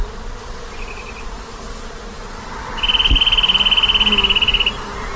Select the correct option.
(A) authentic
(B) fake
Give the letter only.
A